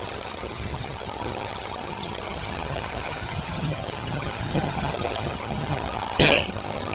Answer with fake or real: fake